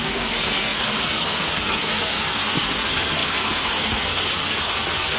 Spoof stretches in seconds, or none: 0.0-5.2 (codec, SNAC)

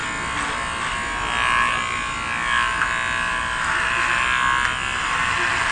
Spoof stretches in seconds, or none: none

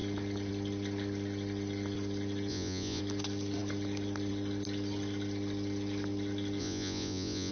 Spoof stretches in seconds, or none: 2.5-3.0 (vocoder, Vocos); 6.6-7.5

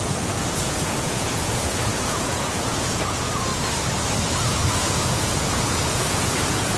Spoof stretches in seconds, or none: 0.0-3.5 (vocoder, Vocos); 4.5-6.8

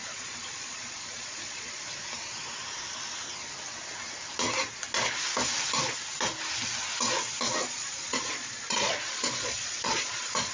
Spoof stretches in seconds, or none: 0.0-1.8 (vocoder, Vocos); 7.6-10.5

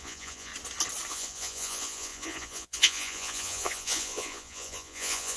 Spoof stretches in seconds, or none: 0.0-0.5 (vocoder, Vocos); 1.1-5.4

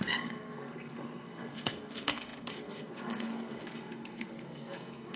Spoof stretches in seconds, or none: 0.0-5.2 (codec, SNAC)

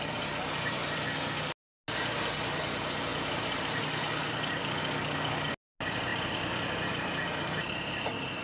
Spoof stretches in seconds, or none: 4.6-5.5 (codec, DAC)